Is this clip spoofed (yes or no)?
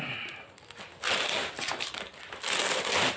no